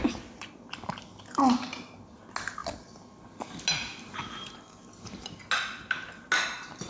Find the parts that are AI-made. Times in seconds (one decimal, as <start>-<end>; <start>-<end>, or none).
none